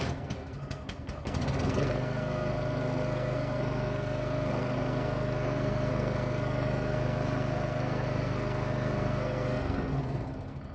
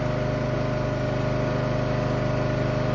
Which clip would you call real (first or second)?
second